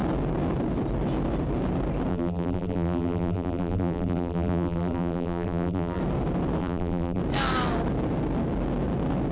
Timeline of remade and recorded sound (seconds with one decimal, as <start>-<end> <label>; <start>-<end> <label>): 0.0-2.1 recorded; 2.1-6.0 remade; 6.0-6.6 recorded; 6.6-7.2 remade; 7.2-9.3 recorded